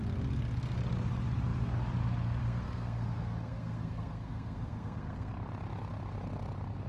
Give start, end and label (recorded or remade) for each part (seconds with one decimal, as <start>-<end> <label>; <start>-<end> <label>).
0.0-2.4 recorded; 2.4-5.3 remade; 5.3-6.9 recorded

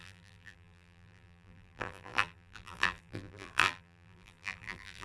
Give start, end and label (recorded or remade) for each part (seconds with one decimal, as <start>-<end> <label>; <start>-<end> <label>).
0.0-5.0 remade

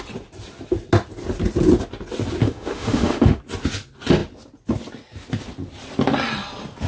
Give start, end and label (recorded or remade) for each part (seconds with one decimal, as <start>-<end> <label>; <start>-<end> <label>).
0.0-2.4 recorded; 2.4-3.4 remade; 3.4-6.9 recorded

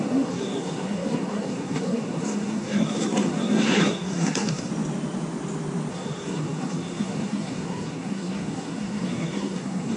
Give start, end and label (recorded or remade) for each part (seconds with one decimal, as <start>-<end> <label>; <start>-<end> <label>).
0.0-4.7 remade; 4.7-5.9 recorded; 5.9-10.0 remade

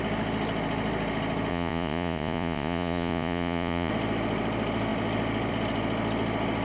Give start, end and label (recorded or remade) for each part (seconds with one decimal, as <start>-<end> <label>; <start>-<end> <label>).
0.0-1.5 recorded; 1.5-3.9 remade; 3.9-6.6 recorded

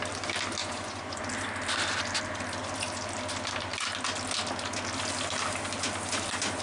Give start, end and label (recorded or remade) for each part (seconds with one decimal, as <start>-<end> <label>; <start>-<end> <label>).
0.0-0.6 recorded; 0.6-1.2 remade; 1.2-6.6 recorded

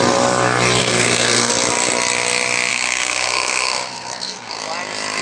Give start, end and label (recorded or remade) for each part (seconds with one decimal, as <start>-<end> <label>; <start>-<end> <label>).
0.0-0.8 recorded; 0.8-1.5 remade; 1.5-2.7 recorded; 2.7-4.6 remade; 4.6-5.2 recorded

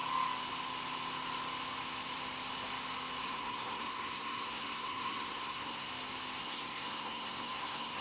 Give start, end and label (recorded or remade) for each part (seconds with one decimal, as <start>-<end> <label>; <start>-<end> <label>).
0.0-3.2 recorded; 3.2-5.9 remade; 5.9-6.4 recorded; 6.4-8.0 remade